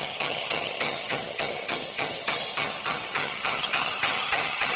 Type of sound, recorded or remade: remade